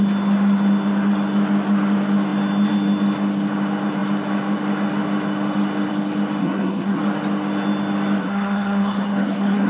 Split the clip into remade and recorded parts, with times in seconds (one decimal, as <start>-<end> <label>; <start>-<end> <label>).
0.0-6.4 recorded; 6.4-7.0 remade; 7.0-8.2 recorded; 8.2-9.7 remade